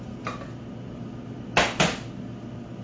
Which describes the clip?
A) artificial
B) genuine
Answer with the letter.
B